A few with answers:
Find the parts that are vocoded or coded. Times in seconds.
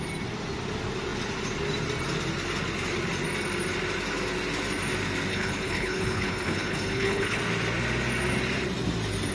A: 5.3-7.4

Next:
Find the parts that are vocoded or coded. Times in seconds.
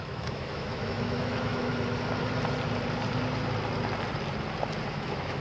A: 0.0-1.7; 4.9-5.4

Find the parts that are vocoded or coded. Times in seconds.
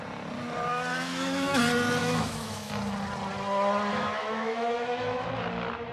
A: 0.9-1.6; 2.0-2.7; 3.9-5.3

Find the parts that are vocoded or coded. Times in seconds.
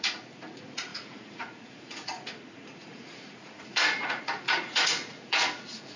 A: 0.0-6.0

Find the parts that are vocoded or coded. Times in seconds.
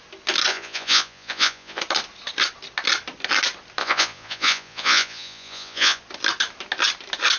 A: 0.5-1.8; 3.8-6.0